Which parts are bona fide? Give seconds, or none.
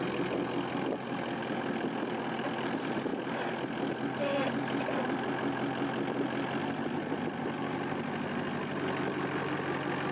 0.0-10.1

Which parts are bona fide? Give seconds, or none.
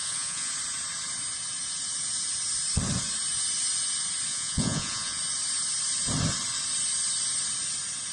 0.5-4.3; 5.2-8.1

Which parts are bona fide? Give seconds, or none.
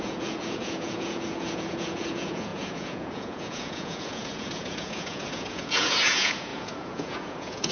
none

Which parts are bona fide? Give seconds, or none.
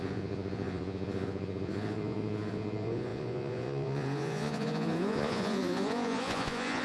none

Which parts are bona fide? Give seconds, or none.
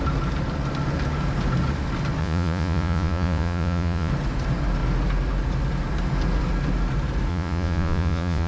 0.0-2.2; 4.1-7.3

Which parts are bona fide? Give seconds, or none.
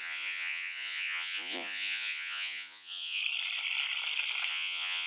3.2-4.5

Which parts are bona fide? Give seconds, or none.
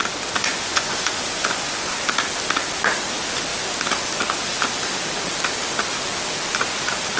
0.0-0.5; 1.9-7.2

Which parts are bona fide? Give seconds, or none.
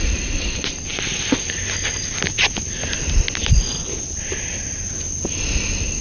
0.0-6.0